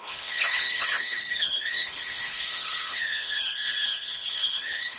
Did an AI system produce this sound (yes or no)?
yes